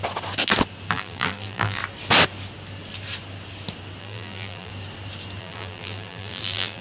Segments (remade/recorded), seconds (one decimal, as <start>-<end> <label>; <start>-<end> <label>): 0.0-0.9 recorded; 0.9-1.8 remade; 1.8-4.0 recorded; 4.0-4.7 remade; 4.7-5.4 recorded; 5.4-6.8 remade